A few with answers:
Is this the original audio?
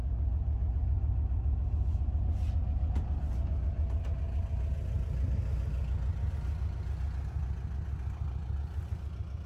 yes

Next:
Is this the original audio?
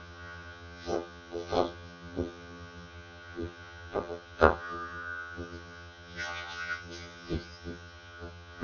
no